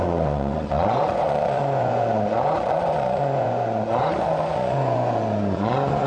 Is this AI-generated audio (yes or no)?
yes